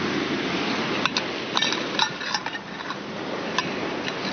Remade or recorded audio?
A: recorded